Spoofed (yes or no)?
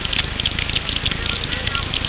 no